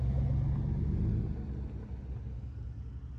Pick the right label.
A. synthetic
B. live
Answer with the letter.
B